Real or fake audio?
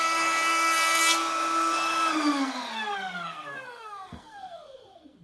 fake